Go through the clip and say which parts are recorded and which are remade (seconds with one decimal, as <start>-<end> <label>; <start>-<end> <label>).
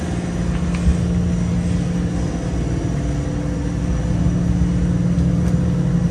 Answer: 0.0-6.1 recorded